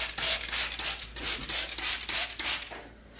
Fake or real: real